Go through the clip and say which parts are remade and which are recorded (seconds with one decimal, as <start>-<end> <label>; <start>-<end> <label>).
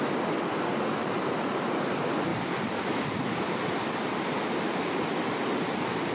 0.0-1.0 recorded; 1.0-1.6 remade; 1.6-6.1 recorded